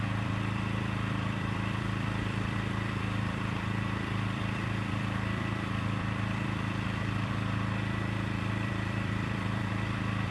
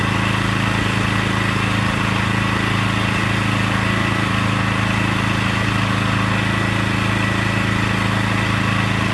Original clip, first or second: second